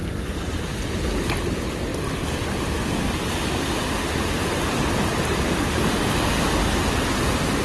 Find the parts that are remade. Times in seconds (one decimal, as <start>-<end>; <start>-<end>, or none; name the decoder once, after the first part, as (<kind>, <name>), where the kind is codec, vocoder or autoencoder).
none